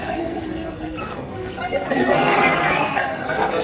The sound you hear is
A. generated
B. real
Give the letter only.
A